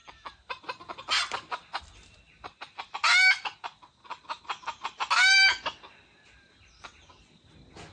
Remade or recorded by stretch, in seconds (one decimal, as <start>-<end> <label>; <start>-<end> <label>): 0.0-7.9 recorded